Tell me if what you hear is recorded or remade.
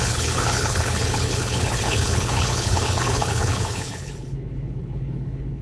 remade